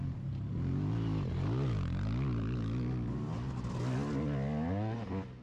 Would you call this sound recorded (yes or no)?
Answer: yes